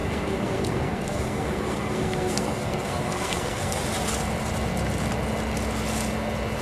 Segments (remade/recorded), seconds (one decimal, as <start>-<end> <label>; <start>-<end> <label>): 0.0-3.8 remade; 3.8-6.6 recorded